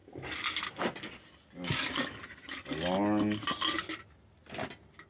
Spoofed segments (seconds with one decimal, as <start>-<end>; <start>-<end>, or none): none